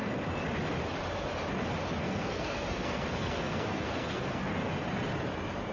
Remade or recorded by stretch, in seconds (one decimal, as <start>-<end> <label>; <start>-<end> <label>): 0.0-2.0 recorded; 2.0-4.7 remade; 4.7-5.7 recorded

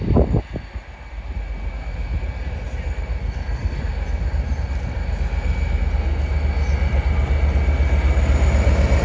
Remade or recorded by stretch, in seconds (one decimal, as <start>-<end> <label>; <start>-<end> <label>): 0.0-3.2 recorded; 3.2-3.8 remade; 3.8-9.0 recorded